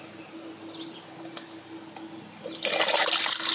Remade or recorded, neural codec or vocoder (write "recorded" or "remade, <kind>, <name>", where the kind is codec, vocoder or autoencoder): recorded